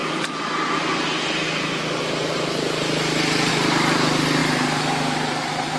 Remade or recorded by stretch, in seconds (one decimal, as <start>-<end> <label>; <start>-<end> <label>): 0.0-5.8 recorded